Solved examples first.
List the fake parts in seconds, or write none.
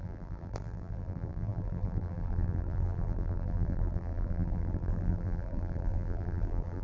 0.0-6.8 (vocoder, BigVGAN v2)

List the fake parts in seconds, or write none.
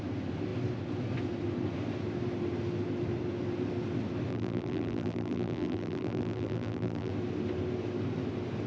4.3-7.1 (vocoder, BigVGAN v2)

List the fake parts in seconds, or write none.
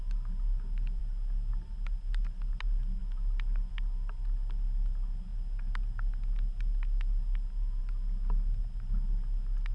none